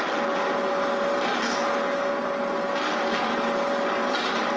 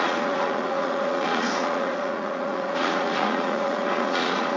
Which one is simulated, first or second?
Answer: second